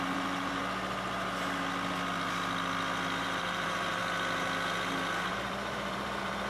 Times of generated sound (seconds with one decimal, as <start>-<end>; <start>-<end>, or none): 0.0-0.6; 3.2-4.0; 5.3-6.5